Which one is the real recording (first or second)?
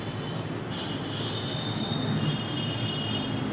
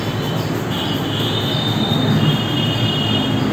second